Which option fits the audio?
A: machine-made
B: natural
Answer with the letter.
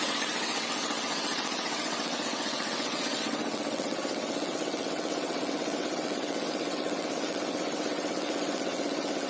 A